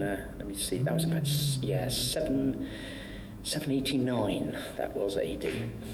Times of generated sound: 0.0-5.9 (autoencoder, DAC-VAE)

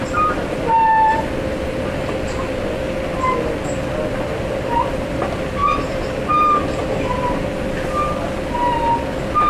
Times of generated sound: 5.6-6.2 (vocoder, BigVGAN v2); 6.8-7.4

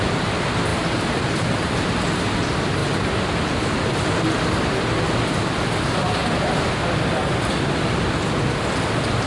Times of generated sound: 0.7-1.3 (vocoder, BigVGAN v2); 2.8-3.3

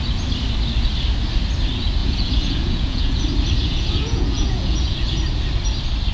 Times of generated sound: 2.0-3.2 (vocoder, Vocos); 3.6-5.2

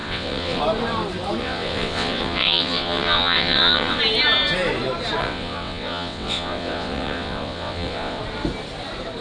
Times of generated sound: 0.0-0.6 (vocoder, WaveNeXt); 1.4-4.0; 5.2-8.2

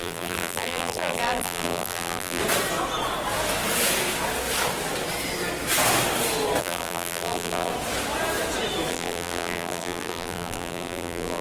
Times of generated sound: 0.0-2.4 (vocoder, BigVGAN v2); 6.6-7.7; 8.9-11.4